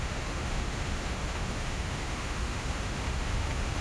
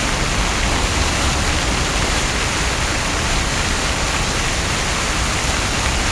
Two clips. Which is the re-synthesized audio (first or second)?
first